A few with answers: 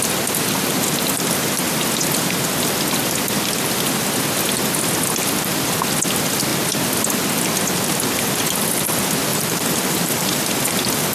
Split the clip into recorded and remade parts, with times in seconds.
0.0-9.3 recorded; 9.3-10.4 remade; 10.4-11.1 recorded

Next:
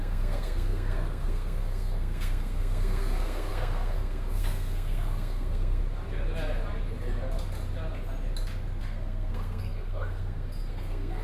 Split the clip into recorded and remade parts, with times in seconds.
0.0-5.8 remade; 5.8-8.8 recorded; 8.8-11.2 remade

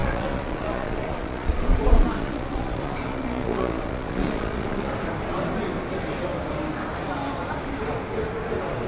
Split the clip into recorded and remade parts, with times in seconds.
0.0-4.9 remade; 4.9-8.9 recorded

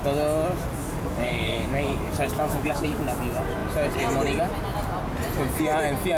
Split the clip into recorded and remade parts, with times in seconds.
0.0-0.8 recorded; 0.8-3.0 remade; 3.0-6.2 recorded